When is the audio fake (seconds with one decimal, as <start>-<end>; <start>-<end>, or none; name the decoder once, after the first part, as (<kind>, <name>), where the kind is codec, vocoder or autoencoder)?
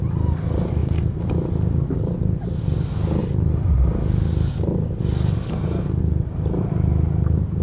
0.0-3.2 (vocoder, BigVGAN v2); 6.0-7.6